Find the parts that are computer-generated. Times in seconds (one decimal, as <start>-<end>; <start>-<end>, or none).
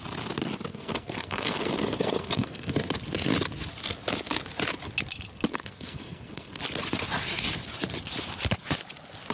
0.7-2.9; 5.5-6.6